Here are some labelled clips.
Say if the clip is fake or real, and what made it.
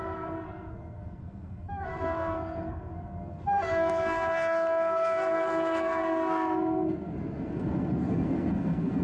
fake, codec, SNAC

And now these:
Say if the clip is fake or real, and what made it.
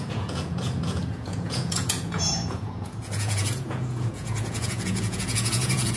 fake, vocoder, Vocos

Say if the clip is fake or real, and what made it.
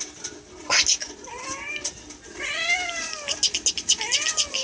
real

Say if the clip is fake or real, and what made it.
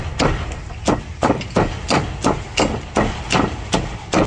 real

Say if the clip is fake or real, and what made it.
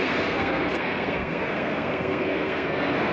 fake, codec, SNAC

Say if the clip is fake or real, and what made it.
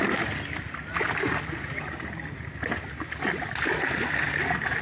real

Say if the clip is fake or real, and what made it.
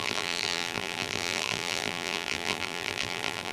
fake, vocoder, BigVGAN v2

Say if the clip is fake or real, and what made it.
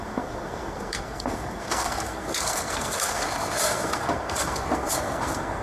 fake, codec, SNAC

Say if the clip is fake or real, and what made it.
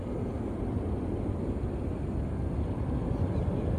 real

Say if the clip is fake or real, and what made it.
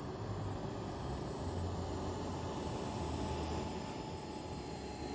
real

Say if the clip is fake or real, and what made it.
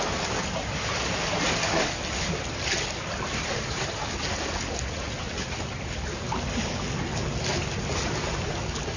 real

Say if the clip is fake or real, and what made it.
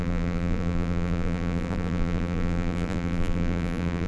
fake, vocoder, BigVGAN v2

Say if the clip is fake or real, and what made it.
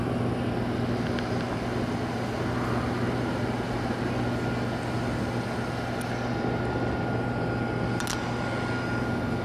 real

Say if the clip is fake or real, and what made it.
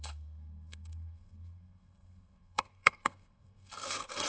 fake, codec, SNAC